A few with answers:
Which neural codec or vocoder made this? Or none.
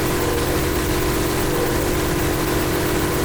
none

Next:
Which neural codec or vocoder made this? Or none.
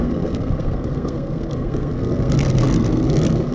codec, SNAC